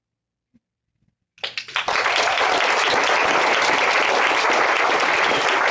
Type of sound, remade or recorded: recorded